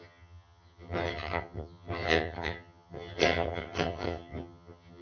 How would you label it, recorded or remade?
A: remade